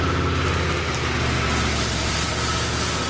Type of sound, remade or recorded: recorded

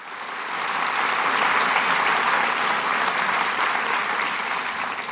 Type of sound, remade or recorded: recorded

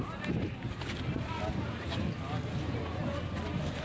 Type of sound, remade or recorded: recorded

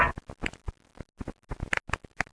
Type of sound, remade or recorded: recorded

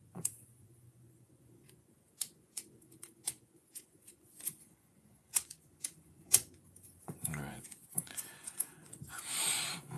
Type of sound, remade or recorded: remade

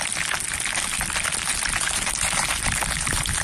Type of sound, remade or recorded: recorded